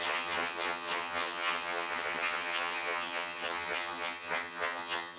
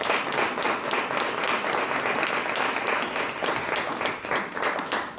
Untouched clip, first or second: second